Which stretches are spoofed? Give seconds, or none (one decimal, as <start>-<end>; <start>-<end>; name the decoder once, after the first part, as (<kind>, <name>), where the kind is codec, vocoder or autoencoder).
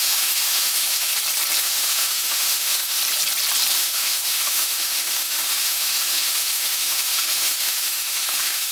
0.0-1.1 (autoencoder, DAC-VAE); 1.6-3.0; 3.7-8.7